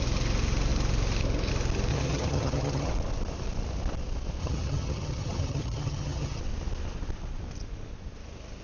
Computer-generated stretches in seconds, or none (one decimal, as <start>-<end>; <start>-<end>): 1.9-2.9; 4.4-6.4